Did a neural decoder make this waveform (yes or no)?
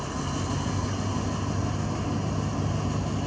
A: no